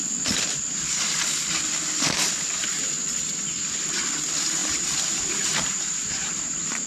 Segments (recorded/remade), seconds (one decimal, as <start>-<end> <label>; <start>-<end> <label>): 0.0-4.6 recorded; 4.6-6.9 remade